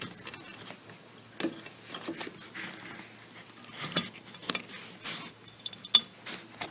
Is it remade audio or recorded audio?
recorded